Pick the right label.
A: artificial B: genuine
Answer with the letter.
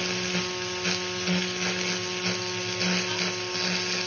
B